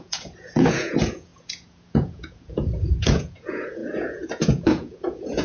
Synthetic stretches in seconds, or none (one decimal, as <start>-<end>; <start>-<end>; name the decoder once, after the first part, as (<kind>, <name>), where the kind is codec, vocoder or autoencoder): 0.0-5.4 (vocoder, Vocos)

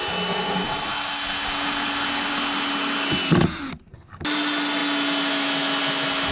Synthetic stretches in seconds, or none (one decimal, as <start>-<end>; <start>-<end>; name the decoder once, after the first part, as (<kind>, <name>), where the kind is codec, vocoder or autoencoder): none